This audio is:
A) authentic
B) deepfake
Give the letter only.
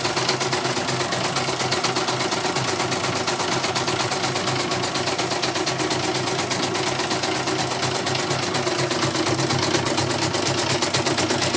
A